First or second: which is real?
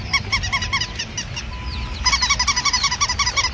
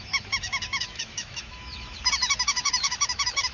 first